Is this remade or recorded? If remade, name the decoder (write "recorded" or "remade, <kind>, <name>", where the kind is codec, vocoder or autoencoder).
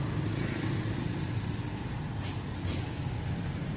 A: recorded